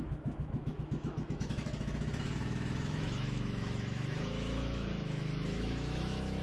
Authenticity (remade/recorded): remade